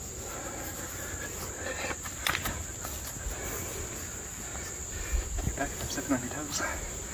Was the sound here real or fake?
real